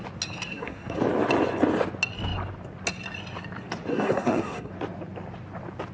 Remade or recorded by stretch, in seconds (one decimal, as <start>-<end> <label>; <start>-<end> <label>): 0.0-0.5 recorded; 0.5-1.0 remade; 1.0-3.9 recorded; 3.9-4.7 remade; 4.7-5.9 recorded